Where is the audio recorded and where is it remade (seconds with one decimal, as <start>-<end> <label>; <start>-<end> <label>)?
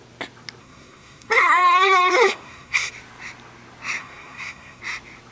0.0-0.6 recorded; 0.6-2.9 remade; 2.9-4.0 recorded; 4.0-4.8 remade; 4.8-5.3 recorded